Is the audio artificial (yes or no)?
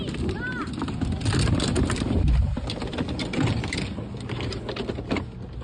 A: no